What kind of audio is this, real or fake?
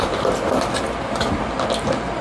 real